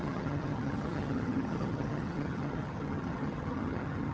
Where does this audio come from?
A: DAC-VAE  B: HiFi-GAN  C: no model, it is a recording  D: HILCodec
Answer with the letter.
B